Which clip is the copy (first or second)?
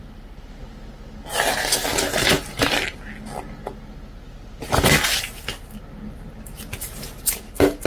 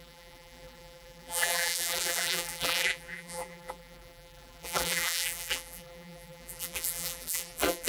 second